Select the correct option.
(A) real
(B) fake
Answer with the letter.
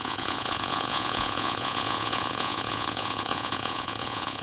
B